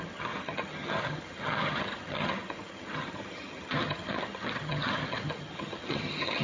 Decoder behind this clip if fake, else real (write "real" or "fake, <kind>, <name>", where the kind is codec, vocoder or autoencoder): fake, vocoder, HiFi-GAN